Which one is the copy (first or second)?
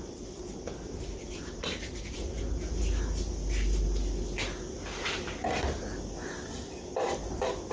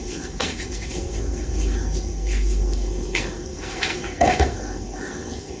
second